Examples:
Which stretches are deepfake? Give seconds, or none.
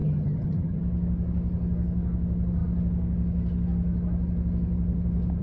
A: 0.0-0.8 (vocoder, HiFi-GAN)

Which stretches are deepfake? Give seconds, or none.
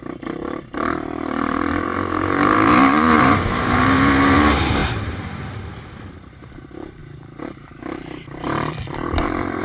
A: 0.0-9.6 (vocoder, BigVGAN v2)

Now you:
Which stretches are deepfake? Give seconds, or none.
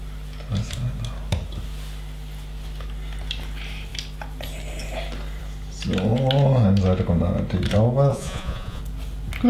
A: 8.1-8.8 (vocoder, Vocos)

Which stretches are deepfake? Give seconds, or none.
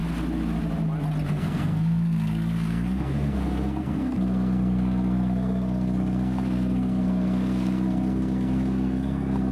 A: 1.3-9.5 (codec, SNAC)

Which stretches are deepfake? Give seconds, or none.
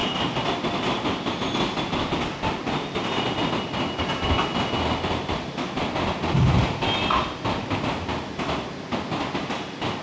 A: none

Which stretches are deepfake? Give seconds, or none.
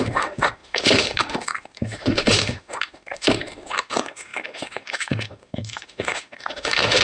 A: 0.0-7.0 (autoencoder, DAC-VAE)